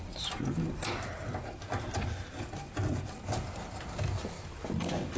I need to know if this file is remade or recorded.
recorded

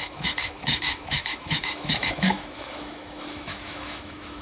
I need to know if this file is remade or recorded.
remade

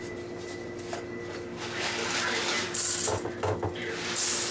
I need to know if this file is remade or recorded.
recorded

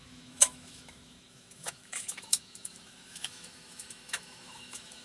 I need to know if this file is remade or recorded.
remade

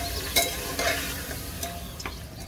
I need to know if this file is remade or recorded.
recorded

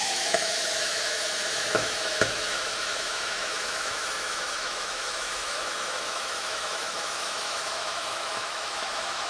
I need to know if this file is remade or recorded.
remade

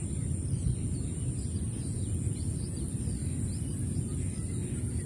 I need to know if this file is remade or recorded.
recorded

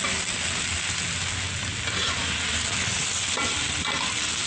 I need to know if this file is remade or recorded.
recorded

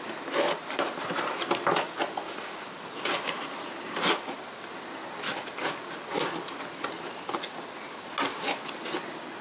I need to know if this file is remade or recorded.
recorded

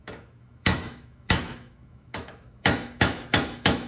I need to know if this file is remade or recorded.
remade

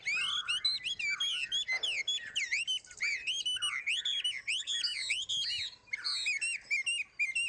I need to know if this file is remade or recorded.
recorded